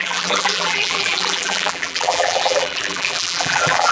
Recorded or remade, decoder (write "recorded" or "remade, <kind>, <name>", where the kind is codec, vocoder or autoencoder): remade, vocoder, BigVGAN v2